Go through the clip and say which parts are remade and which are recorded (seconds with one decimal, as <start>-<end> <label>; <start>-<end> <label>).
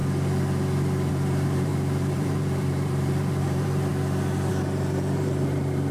0.0-1.1 recorded; 1.1-3.9 remade; 3.9-4.5 recorded; 4.5-5.9 remade